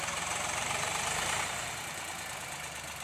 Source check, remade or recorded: remade